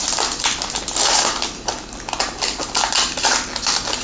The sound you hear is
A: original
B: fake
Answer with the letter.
A